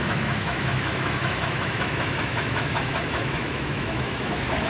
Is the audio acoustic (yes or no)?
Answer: no